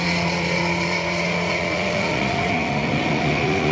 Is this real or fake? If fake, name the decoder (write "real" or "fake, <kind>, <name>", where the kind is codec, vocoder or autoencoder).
fake, vocoder, Vocos